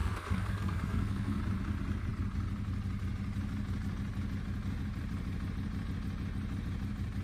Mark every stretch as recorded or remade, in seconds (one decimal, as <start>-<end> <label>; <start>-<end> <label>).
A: 0.0-1.4 remade; 1.4-7.2 recorded